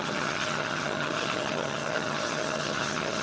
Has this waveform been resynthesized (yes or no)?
yes